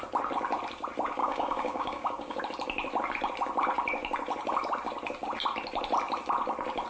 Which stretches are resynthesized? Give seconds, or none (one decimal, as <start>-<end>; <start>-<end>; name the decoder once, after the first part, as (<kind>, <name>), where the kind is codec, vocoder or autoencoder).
1.2-2.4 (codec, DAC)